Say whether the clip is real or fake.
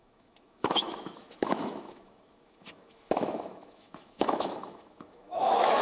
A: fake